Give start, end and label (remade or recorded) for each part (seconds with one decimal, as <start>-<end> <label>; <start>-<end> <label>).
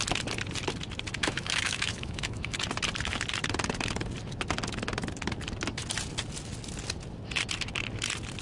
0.0-1.2 recorded; 1.2-2.6 remade; 2.6-8.4 recorded